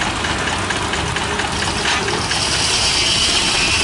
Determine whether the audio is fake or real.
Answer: real